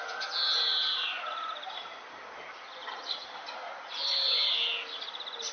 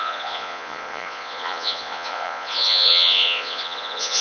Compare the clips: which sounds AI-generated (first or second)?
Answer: second